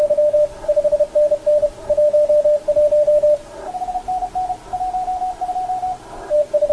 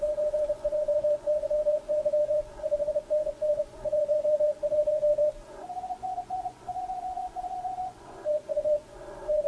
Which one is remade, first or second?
second